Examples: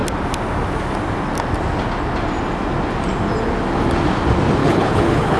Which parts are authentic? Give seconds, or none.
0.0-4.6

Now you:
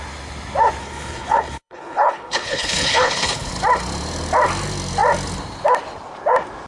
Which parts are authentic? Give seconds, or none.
0.0-0.8; 3.5-6.7

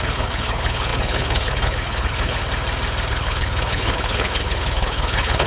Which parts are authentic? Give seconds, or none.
2.4-3.1

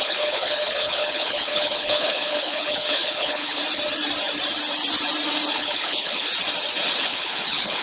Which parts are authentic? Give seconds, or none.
3.6-5.5; 6.3-7.0

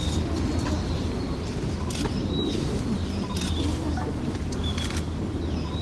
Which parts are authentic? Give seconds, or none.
0.0-5.8

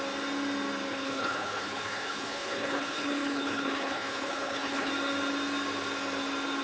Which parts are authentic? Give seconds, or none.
0.0-0.9; 4.9-6.6

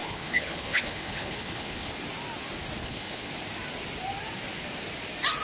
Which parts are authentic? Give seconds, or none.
1.9-2.8; 3.3-5.4

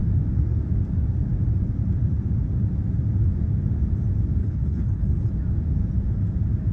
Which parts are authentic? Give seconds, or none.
0.0-4.4; 5.3-6.7